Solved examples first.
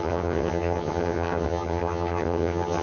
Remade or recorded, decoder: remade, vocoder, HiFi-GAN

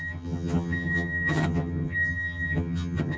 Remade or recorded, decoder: remade, vocoder, HiFi-GAN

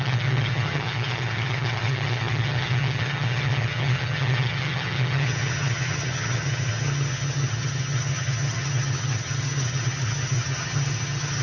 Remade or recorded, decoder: remade, vocoder, HiFi-GAN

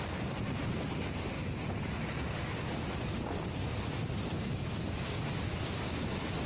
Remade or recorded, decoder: recorded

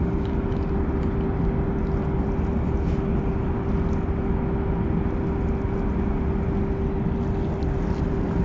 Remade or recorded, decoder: recorded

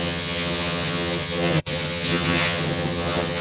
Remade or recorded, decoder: remade, vocoder, HiFi-GAN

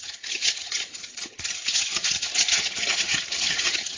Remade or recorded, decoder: remade, vocoder, HiFi-GAN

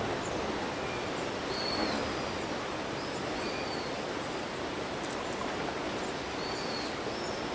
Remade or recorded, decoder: recorded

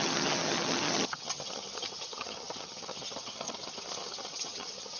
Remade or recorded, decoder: remade, vocoder, HiFi-GAN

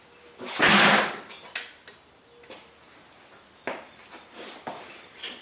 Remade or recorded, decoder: recorded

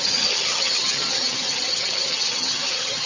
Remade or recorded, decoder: remade, vocoder, HiFi-GAN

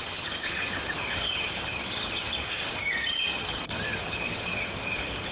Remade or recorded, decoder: remade, vocoder, HiFi-GAN